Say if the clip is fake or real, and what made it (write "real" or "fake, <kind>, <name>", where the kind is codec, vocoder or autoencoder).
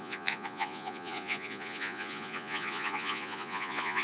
fake, vocoder, Vocos